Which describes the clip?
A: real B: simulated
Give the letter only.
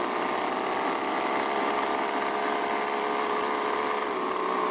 A